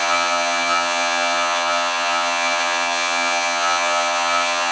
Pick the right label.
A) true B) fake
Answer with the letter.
B